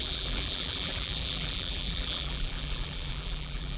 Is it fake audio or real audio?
fake